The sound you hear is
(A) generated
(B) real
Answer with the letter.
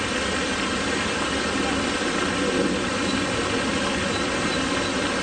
B